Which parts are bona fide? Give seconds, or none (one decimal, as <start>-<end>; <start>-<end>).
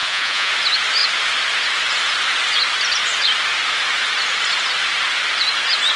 0.5-6.0